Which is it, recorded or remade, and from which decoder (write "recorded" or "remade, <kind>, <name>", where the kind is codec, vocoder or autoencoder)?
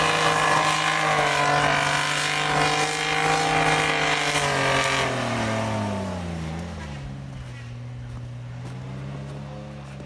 recorded